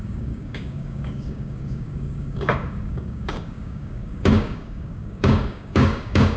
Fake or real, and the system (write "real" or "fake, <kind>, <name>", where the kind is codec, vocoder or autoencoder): fake, codec, DAC